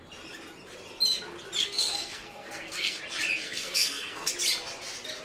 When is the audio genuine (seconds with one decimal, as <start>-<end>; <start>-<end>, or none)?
0.0-1.6; 3.0-3.4; 4.3-5.2